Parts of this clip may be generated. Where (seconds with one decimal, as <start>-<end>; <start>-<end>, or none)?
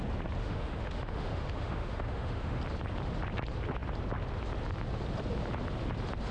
0.4-2.6